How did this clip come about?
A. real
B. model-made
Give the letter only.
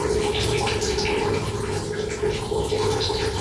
A